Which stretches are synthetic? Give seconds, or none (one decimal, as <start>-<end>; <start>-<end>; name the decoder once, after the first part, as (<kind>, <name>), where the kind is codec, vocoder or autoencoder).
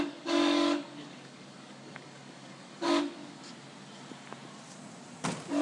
0.0-3.4 (codec, DAC)